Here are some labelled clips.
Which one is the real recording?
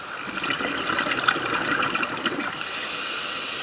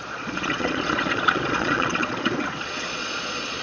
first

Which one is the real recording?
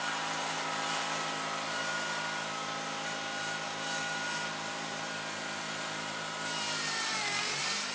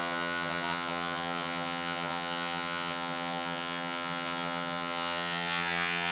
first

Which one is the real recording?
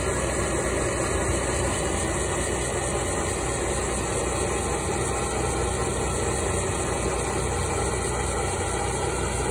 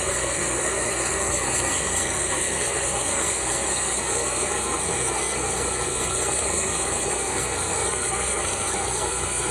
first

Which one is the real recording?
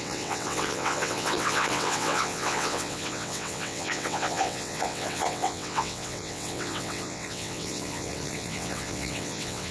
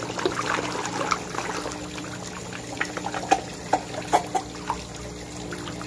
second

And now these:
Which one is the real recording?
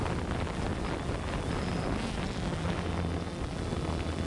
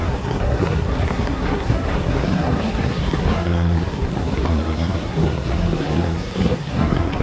first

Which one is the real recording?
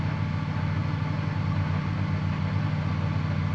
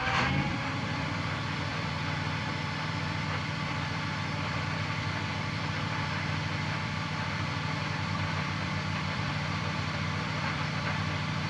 first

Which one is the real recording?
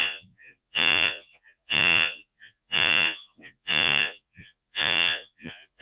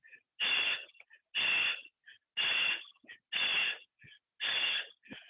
second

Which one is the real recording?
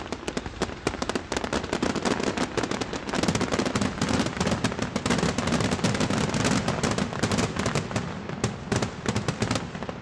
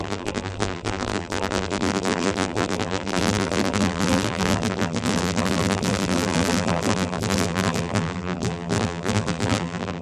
first